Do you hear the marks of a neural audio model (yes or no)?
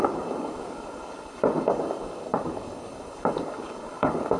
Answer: yes